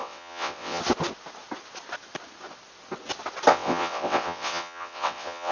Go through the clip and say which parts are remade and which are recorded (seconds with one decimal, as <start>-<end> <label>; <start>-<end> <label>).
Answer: 0.0-0.8 remade; 0.8-3.5 recorded; 3.5-5.5 remade